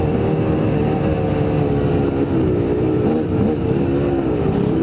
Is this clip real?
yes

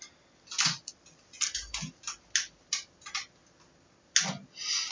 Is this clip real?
yes